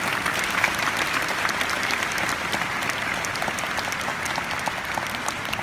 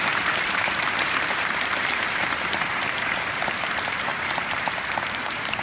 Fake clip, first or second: second